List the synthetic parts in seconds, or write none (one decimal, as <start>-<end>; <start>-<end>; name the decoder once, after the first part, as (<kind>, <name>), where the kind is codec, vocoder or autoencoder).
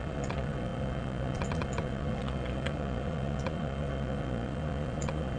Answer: 0.0-5.4 (vocoder, Vocos)